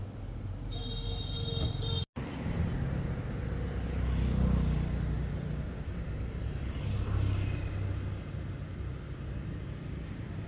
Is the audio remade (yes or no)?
no